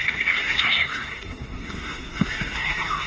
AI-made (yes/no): yes